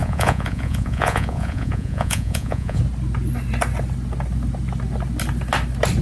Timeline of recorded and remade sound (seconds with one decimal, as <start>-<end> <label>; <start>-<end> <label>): 0.0-2.8 remade; 2.8-6.0 recorded